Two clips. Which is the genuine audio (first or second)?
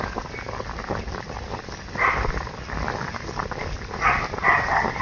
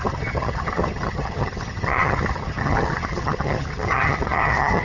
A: first